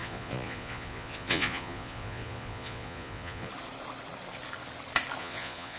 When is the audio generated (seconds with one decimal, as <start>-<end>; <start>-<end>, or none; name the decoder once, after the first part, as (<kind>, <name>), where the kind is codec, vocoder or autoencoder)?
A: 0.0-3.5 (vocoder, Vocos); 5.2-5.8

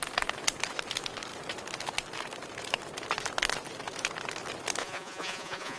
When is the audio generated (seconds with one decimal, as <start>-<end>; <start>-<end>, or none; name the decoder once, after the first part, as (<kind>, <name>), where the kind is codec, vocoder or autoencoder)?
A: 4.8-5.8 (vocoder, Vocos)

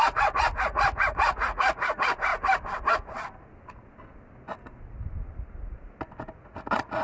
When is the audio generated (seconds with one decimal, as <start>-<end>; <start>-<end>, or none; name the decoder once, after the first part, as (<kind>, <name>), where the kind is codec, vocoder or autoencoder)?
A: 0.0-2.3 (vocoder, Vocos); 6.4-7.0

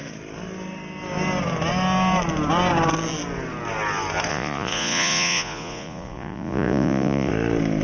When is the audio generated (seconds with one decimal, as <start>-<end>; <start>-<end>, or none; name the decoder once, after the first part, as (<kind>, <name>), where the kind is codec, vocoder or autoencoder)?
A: 4.3-7.3 (vocoder, Vocos)